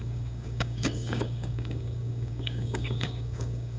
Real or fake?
fake